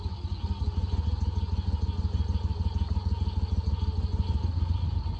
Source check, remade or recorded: recorded